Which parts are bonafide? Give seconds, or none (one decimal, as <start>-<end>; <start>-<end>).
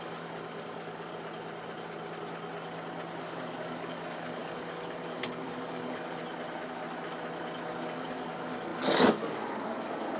1.1-3.2; 6.2-7.7